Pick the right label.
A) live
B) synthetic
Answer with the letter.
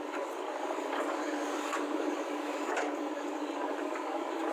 B